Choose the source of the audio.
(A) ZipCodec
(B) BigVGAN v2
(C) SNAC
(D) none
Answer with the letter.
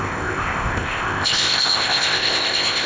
A